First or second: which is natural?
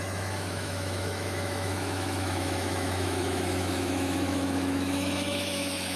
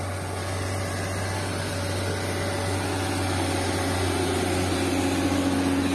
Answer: second